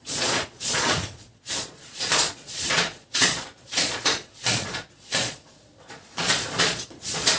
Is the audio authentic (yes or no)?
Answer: no